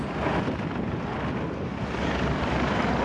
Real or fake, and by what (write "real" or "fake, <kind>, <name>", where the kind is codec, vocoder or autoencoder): real